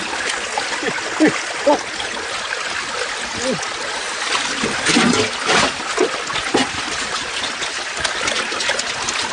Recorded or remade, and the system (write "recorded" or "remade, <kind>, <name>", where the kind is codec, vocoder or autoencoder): recorded